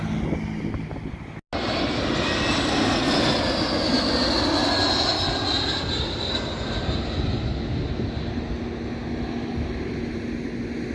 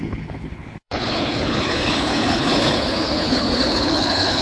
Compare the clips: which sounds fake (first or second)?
second